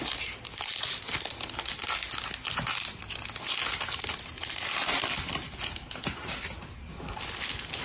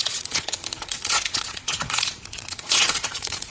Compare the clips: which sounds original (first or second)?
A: first